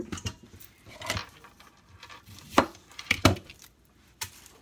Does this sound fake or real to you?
fake